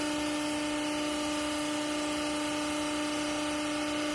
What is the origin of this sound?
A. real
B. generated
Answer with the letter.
A